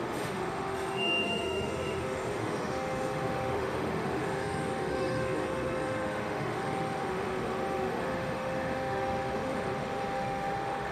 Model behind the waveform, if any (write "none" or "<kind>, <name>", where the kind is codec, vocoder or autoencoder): autoencoder, DAC-VAE